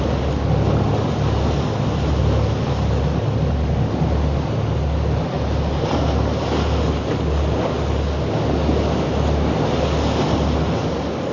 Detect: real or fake real